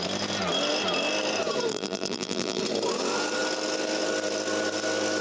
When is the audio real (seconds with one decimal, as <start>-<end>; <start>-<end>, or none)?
0.0-1.7; 2.6-5.2